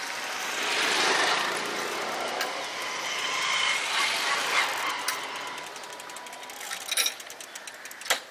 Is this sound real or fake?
real